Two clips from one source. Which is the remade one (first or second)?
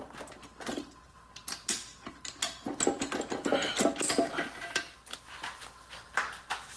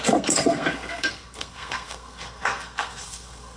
second